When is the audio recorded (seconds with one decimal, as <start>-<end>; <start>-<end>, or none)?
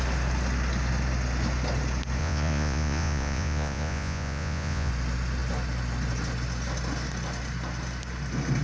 0.0-2.2; 4.9-8.6